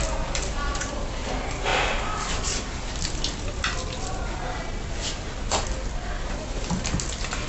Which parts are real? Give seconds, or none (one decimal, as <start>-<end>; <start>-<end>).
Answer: 0.0-7.5